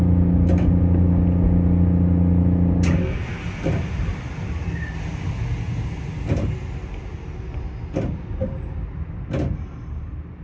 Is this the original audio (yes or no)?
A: yes